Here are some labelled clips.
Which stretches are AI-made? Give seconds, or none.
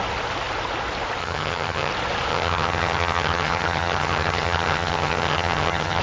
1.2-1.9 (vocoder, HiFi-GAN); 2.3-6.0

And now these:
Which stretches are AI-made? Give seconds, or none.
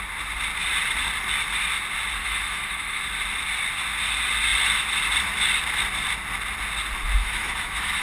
2.2-3.0 (autoencoder, DAC-VAE); 7.2-8.0